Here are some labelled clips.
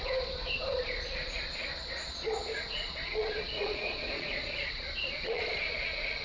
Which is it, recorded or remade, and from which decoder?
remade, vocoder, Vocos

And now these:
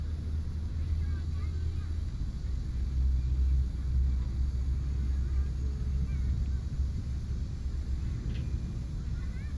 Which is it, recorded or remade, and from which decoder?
recorded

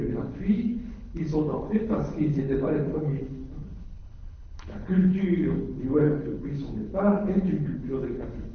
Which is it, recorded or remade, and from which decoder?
remade, codec, HILCodec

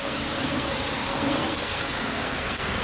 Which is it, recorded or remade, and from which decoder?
remade, codec, SNAC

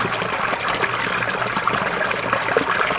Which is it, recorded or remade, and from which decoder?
recorded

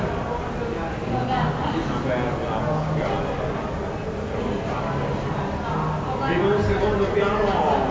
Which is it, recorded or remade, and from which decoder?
recorded